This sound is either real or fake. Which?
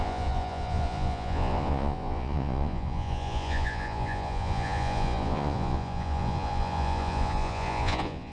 fake